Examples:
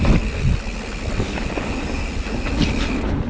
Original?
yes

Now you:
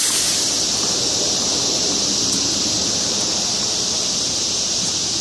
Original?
no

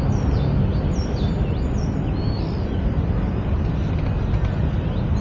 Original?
yes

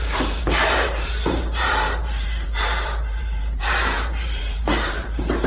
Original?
no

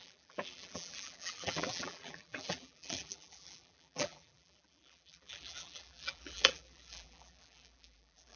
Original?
no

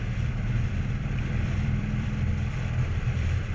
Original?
no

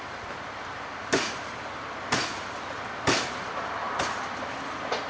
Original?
no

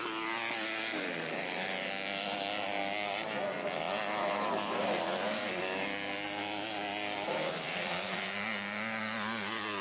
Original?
no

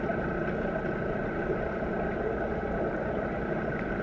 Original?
no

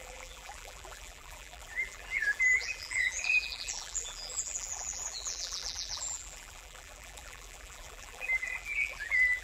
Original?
no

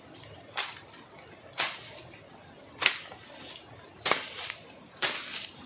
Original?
yes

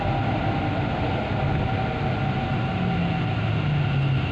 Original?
yes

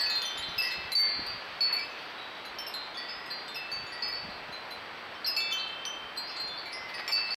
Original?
yes